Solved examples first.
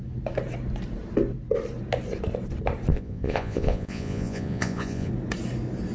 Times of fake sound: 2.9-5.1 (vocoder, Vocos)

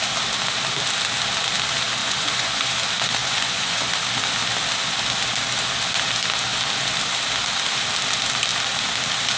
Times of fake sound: 2.0-2.7 (vocoder, Vocos); 3.2-3.9

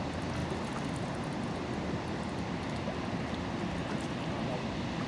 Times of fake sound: none

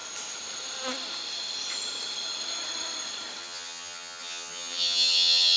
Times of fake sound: 3.4-5.6 (vocoder, HiFi-GAN)

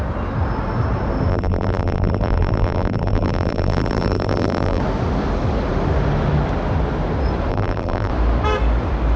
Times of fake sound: 1.3-4.8 (vocoder, BigVGAN v2); 7.5-8.1